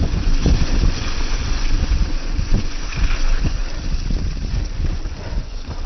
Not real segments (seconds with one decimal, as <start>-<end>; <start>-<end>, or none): 0.0-3.6; 4.5-5.9